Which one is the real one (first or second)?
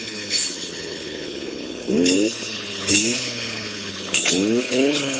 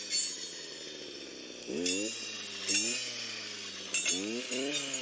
second